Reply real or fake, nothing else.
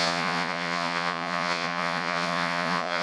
fake